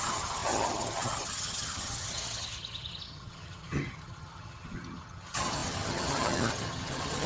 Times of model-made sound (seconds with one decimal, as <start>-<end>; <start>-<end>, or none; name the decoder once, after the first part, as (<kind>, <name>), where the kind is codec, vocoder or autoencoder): 0.0-7.3 (vocoder, HiFi-GAN)